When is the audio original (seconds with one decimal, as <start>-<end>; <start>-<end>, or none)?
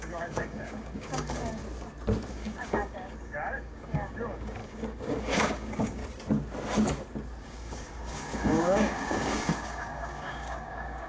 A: 1.6-2.3; 6.0-7.4